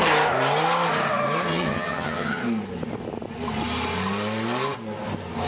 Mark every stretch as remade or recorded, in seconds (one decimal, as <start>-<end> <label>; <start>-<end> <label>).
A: 0.0-1.5 recorded; 1.5-2.4 remade; 2.4-5.5 recorded